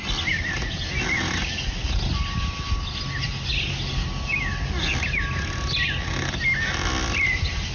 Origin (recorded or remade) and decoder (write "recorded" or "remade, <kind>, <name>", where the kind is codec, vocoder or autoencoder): recorded